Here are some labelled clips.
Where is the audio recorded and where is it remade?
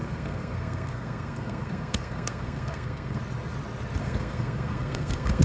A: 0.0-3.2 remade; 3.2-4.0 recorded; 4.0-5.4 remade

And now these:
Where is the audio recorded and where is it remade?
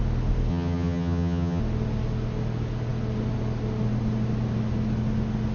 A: 0.0-0.5 recorded; 0.5-1.6 remade; 1.6-5.5 recorded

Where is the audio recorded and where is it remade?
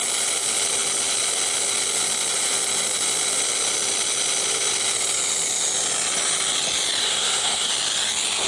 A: 0.0-7.0 recorded; 7.0-7.7 remade; 7.7-8.5 recorded